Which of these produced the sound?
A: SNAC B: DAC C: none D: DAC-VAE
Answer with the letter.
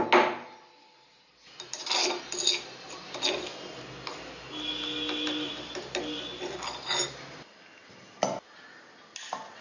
C